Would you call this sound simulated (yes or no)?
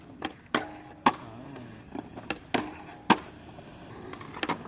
no